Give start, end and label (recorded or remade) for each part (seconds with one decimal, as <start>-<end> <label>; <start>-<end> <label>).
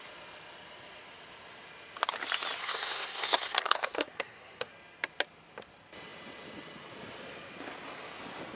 0.0-2.6 recorded; 2.6-4.7 remade; 4.7-8.6 recorded